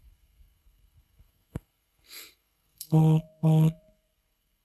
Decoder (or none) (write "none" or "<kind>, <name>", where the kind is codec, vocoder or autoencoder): codec, SNAC